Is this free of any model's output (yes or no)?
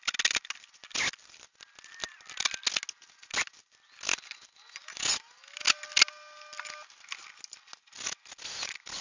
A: yes